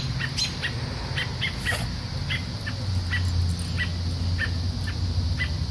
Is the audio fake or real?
real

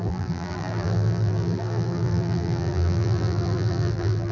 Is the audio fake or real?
fake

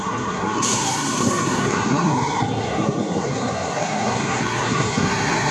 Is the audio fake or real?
fake